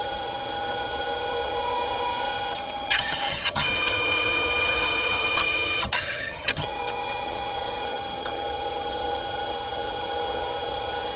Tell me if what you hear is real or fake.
fake